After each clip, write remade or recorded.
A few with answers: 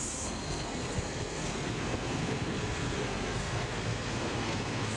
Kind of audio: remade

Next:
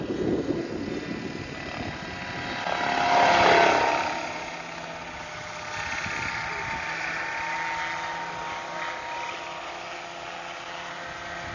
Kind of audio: recorded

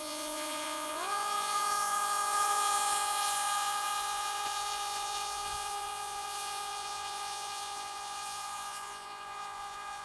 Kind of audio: remade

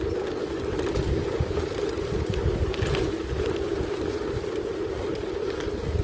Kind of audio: recorded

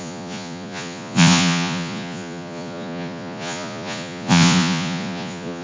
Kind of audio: remade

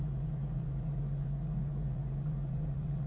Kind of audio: remade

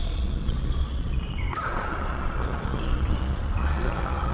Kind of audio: remade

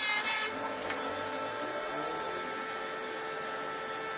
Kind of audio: recorded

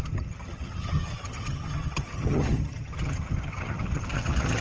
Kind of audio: remade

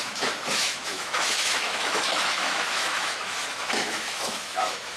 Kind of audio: remade